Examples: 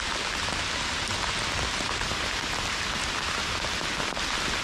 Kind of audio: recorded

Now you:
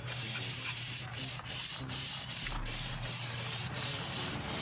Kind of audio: remade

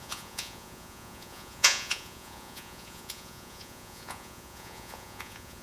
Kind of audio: remade